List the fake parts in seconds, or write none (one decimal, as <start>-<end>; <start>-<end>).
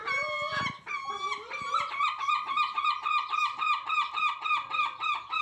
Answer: none